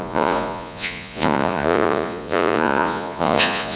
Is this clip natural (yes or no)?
no